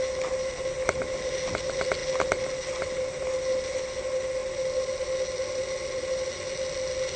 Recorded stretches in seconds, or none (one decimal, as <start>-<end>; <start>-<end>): 0.0-7.2